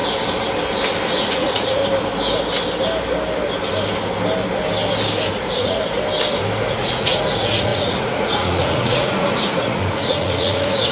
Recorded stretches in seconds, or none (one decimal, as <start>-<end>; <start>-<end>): 0.0-1.1; 1.8-5.3; 5.8-6.7